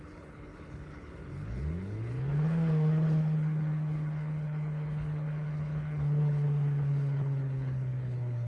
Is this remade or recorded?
remade